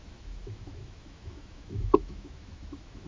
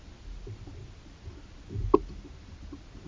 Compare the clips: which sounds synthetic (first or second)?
first